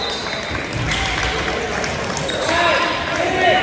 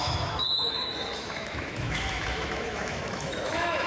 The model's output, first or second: second